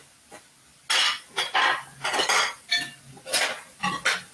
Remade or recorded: recorded